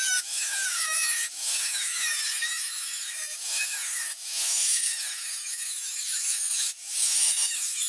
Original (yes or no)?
no